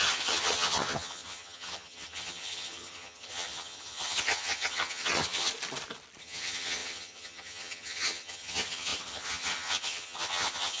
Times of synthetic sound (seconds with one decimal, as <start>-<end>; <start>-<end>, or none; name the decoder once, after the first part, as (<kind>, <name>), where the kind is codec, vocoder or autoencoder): 0.0-5.5 (vocoder, HiFi-GAN); 6.2-10.8